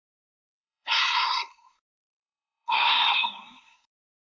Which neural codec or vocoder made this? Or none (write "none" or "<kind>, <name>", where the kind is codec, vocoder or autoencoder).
codec, SNAC